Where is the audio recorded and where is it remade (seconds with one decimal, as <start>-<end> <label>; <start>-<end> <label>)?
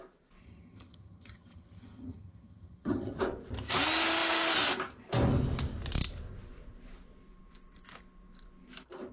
0.0-0.4 recorded; 0.4-3.2 remade; 3.2-9.1 recorded